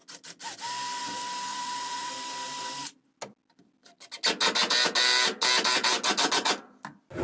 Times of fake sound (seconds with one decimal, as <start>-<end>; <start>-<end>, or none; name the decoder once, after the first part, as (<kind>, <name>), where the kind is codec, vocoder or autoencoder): 1.5-2.1 (vocoder, Vocos)